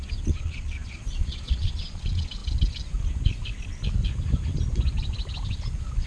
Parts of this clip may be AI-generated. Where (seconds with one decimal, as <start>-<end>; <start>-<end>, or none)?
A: 0.0-2.4